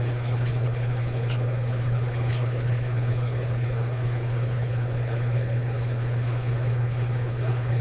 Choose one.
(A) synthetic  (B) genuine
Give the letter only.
A